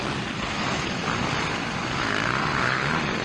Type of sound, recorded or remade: recorded